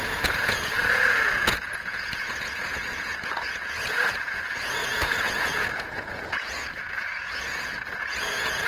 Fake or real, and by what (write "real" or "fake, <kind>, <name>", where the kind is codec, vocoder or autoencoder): fake, vocoder, Vocos